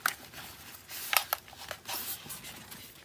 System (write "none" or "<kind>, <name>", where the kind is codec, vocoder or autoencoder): none